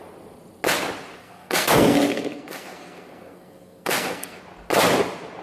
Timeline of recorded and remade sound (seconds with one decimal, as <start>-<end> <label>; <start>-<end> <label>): 0.0-1.2 recorded; 1.2-4.4 remade; 4.4-5.4 recorded